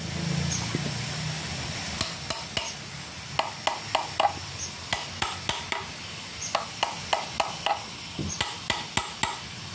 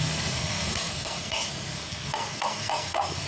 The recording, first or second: first